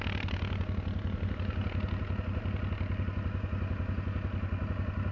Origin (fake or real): real